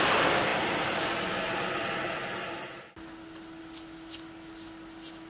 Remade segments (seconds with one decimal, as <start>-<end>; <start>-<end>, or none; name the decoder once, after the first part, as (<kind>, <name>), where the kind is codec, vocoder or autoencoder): none